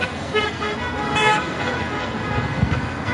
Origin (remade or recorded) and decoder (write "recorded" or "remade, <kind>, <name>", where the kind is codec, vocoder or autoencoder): remade, codec, SNAC